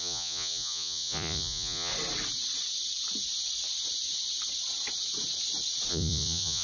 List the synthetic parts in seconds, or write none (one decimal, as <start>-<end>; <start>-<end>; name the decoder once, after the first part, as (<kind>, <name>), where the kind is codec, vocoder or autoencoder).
0.0-1.9 (vocoder, Vocos); 5.9-6.6